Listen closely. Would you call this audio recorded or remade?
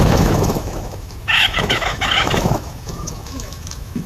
remade